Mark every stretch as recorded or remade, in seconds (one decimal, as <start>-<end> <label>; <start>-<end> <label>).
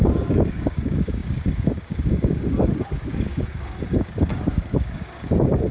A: 0.0-5.7 remade